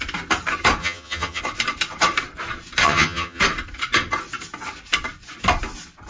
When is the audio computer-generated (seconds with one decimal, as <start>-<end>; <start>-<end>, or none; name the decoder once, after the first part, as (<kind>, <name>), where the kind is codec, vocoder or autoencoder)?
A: 0.8-1.4 (vocoder, HiFi-GAN); 2.8-3.4